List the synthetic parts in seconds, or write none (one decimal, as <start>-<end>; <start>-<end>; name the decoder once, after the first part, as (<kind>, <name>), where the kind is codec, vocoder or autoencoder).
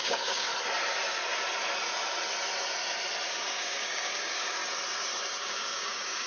0.0-0.5 (codec, DAC); 3.3-4.6; 5.4-6.3